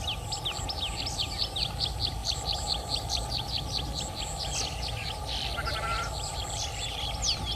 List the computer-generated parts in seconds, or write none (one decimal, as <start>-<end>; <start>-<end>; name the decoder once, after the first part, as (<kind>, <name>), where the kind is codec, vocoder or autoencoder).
2.2-3.5 (vocoder, BigVGAN v2)